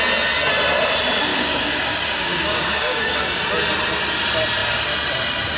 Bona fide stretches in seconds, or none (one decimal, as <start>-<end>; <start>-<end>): 0.0-1.3; 3.4-5.6